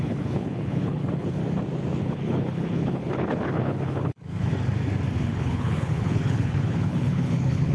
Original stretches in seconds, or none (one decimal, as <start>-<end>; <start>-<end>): 1.4-2.0; 4.5-5.2